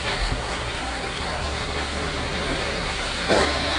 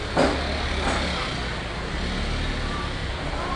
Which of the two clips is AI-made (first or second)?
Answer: first